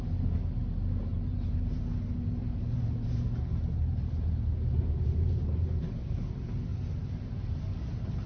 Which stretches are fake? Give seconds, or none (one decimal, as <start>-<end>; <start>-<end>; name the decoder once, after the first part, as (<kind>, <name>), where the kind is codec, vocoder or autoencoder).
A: 1.1-1.9 (vocoder, BigVGAN v2); 2.4-5.6; 6.7-7.3